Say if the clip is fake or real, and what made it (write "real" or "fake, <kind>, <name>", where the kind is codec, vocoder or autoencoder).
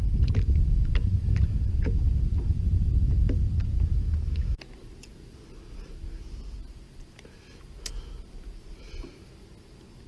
real